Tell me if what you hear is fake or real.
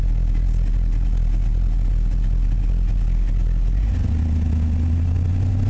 real